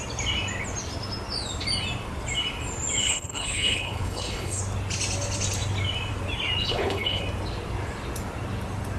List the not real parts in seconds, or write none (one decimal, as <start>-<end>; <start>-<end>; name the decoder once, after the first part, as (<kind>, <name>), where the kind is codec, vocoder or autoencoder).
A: 3.0-4.6 (codec, HILCodec); 6.6-7.2